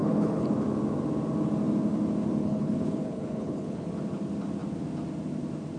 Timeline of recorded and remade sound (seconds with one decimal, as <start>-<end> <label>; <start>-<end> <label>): 0.0-0.5 remade; 0.5-2.4 recorded; 2.4-3.9 remade; 3.9-5.8 recorded